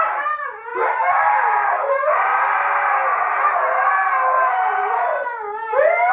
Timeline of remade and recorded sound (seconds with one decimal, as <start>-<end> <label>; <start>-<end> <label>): 0.0-6.1 recorded